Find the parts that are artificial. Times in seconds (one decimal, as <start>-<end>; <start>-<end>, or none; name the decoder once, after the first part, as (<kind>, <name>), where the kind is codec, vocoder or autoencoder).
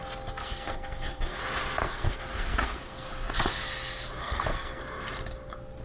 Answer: 0.4-1.4 (codec, SNAC); 1.8-3.1; 4.2-4.8